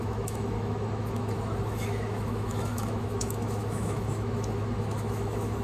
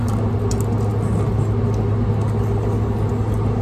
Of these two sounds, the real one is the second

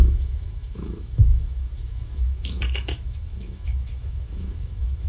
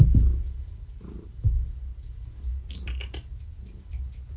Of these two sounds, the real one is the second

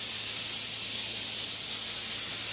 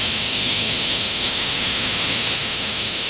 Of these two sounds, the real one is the first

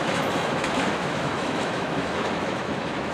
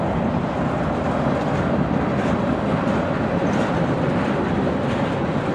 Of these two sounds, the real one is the second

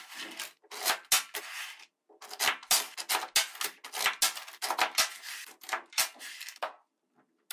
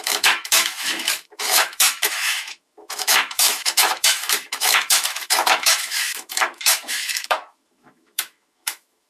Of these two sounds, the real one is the first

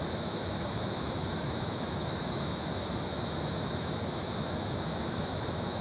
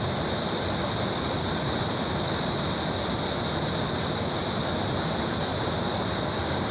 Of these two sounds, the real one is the second